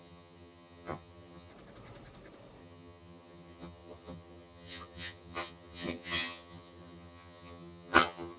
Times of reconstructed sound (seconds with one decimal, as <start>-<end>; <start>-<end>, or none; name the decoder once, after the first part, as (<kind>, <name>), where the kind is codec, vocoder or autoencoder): 0.0-1.5 (vocoder, HiFi-GAN); 2.6-8.4